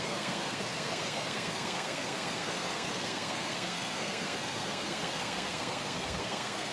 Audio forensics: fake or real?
fake